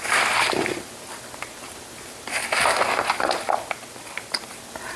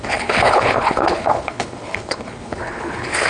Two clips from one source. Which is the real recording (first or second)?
first